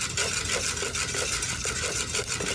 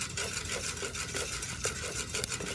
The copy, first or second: second